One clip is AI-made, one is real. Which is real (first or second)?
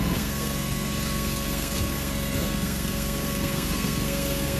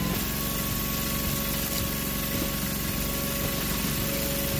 second